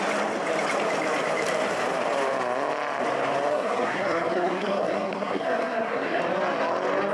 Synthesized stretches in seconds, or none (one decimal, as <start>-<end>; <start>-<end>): 3.5-6.2

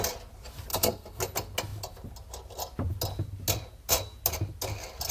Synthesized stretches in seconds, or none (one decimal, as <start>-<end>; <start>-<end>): 0.7-1.2

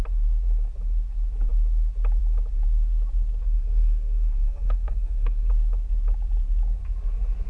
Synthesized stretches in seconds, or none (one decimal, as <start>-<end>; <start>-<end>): 3.4-5.5

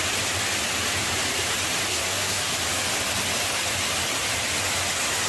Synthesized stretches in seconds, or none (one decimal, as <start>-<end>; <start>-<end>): 1.9-2.5

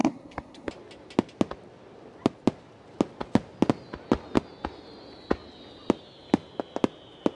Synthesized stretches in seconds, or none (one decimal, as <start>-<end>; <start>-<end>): 0.0-0.7

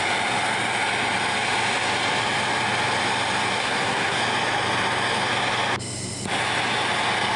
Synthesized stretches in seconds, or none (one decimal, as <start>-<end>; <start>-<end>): 3.6-4.2

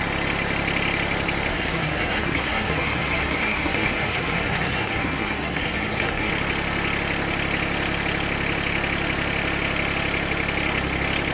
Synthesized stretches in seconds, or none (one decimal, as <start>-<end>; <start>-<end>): 1.5-6.3

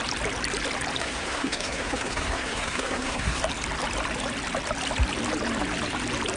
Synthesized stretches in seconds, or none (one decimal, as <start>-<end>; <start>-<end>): 1.0-3.4